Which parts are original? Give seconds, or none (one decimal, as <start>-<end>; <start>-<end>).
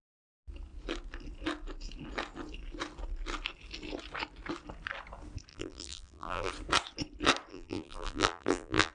0.0-5.5; 6.5-7.5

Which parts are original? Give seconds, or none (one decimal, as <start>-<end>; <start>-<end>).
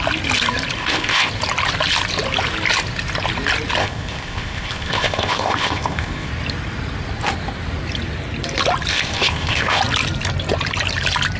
0.0-0.8; 1.3-3.8; 6.3-8.9; 9.8-11.4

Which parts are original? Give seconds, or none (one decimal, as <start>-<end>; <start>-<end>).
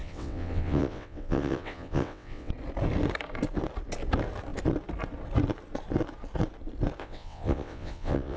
2.5-7.0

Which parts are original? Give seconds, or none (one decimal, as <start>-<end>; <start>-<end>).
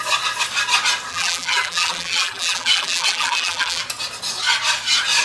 0.0-1.1; 3.8-5.2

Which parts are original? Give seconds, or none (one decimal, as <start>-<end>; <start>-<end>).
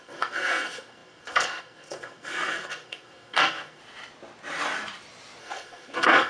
3.8-5.4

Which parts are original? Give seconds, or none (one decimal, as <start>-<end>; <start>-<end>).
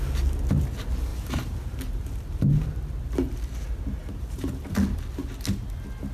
0.0-1.1; 1.8-4.0; 4.7-6.1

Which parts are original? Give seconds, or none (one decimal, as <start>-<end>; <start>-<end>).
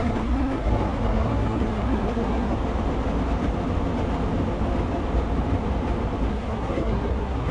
2.6-6.3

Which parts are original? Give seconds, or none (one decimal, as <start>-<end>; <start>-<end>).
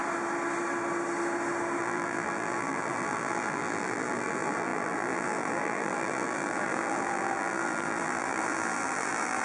0.0-1.8